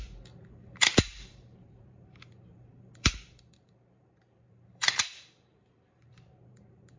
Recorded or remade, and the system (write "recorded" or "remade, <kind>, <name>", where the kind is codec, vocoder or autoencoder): remade, vocoder, BigVGAN v2